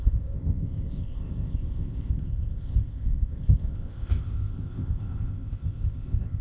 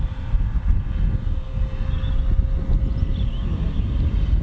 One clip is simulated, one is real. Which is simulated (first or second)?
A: first